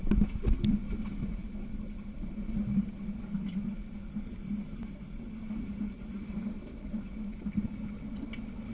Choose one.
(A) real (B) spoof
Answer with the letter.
A